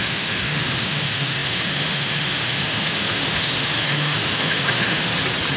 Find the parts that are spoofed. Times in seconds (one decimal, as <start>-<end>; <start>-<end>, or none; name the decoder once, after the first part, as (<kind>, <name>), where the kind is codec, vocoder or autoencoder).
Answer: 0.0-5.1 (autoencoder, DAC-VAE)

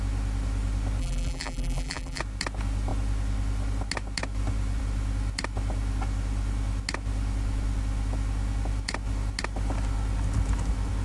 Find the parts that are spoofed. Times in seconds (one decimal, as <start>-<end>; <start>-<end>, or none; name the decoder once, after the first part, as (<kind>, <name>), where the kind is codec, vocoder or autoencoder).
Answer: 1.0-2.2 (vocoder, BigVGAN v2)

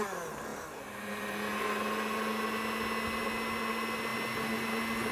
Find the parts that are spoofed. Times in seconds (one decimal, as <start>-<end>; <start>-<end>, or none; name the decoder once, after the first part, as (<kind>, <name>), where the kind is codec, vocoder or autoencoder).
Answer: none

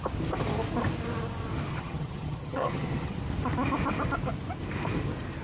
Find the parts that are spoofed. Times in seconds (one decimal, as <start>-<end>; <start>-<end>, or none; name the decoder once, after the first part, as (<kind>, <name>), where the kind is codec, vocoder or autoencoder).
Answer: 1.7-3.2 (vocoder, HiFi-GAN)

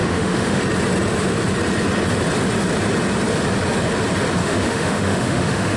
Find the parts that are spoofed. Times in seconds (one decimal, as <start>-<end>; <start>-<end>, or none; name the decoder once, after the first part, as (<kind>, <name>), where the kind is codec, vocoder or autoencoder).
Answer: 0.0-0.6 (autoencoder, DAC-VAE); 4.4-5.8

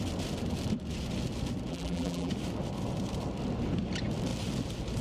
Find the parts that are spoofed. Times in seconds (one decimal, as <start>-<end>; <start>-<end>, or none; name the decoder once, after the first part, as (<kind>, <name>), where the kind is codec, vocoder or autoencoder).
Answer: 1.7-2.3 (vocoder, BigVGAN v2)

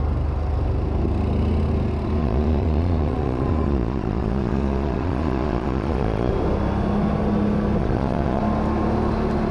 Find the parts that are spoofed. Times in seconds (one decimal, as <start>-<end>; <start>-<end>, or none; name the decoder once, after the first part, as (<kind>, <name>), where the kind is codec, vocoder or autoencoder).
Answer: 2.2-6.3 (vocoder, Vocos); 7.8-8.4

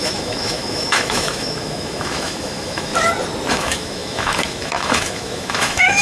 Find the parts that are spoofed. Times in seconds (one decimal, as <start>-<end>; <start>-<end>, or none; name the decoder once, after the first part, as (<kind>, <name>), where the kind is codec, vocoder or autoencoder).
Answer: 0.0-2.9 (autoencoder, DAC-VAE); 3.5-6.0